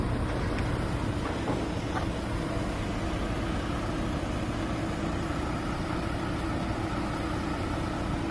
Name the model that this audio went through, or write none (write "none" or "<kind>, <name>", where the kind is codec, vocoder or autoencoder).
none